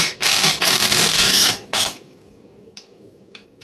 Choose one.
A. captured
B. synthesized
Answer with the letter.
B